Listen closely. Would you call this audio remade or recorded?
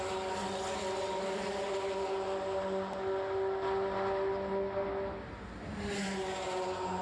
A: recorded